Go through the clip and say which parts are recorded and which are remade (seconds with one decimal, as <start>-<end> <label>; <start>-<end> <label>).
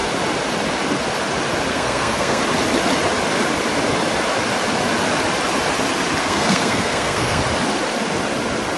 0.0-1.7 recorded; 1.7-2.4 remade; 2.4-6.2 recorded; 6.2-7.4 remade; 7.4-8.8 recorded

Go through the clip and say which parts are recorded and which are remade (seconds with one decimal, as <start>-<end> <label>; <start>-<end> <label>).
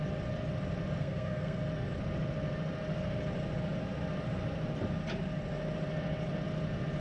0.0-1.0 recorded; 1.0-1.6 remade; 1.6-7.0 recorded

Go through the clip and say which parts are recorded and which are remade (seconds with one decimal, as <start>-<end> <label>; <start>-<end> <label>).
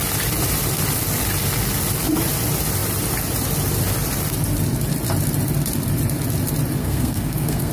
0.0-6.8 recorded; 6.8-7.7 remade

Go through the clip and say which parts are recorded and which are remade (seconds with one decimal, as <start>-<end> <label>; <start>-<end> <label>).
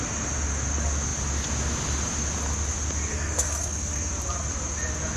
0.0-3.1 recorded; 3.1-4.1 remade; 4.1-5.2 recorded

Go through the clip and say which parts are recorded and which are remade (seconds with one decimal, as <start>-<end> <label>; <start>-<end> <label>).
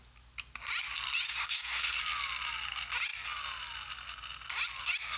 0.0-1.3 recorded; 1.3-2.0 remade; 2.0-5.2 recorded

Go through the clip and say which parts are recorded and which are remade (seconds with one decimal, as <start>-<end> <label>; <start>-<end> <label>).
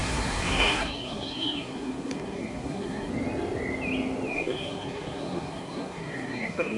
0.0-3.1 remade; 3.1-4.3 recorded; 4.3-6.8 remade